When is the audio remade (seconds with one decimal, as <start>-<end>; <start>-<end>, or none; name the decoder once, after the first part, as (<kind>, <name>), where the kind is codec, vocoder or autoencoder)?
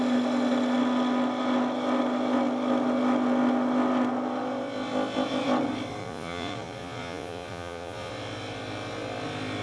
6.0-8.1 (vocoder, Vocos)